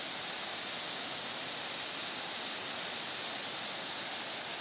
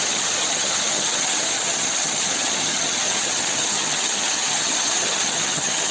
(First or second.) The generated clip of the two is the second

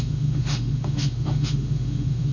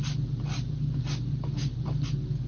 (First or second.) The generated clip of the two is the first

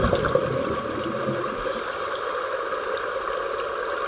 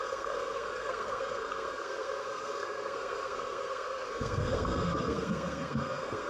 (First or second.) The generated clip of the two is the second